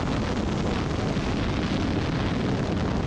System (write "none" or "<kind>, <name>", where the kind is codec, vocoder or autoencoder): none